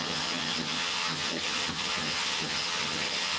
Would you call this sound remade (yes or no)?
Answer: yes